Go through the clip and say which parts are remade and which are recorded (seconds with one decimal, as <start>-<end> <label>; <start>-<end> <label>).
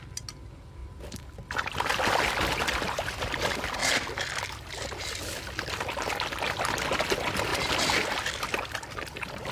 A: 0.0-9.5 recorded